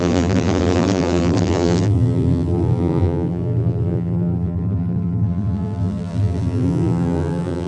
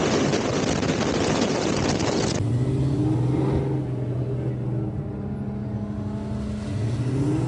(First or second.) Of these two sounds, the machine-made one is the first